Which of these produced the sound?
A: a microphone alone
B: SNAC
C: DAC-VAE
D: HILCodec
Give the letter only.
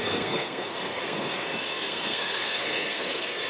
B